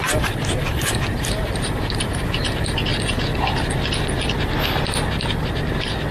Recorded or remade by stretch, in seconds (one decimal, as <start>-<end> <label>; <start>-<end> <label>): 0.0-2.9 remade; 2.9-6.1 recorded